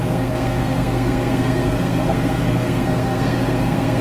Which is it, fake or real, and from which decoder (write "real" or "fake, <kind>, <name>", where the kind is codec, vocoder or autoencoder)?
fake, codec, SNAC